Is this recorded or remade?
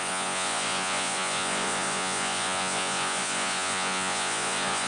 remade